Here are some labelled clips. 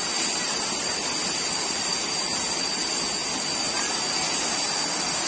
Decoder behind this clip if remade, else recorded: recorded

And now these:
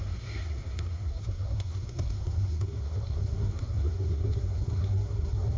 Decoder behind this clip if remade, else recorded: remade, codec, SNAC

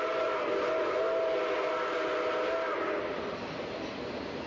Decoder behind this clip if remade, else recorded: recorded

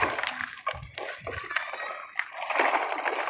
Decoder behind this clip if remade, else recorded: recorded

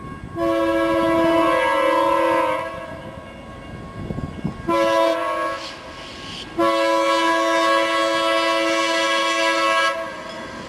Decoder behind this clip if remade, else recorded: recorded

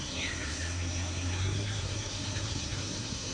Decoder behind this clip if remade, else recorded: remade, codec, SNAC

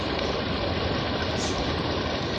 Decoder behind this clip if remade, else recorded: recorded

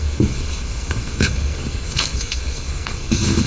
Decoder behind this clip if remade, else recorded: remade, codec, SNAC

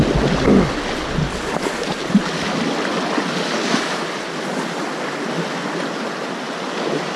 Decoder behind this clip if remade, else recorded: recorded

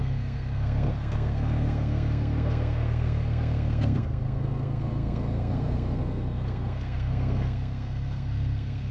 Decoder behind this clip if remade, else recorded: remade, codec, SNAC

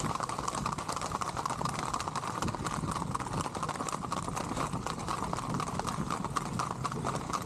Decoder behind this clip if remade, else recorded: recorded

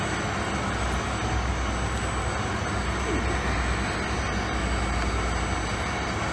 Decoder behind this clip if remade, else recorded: recorded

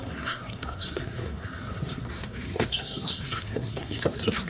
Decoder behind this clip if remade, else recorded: remade, codec, SNAC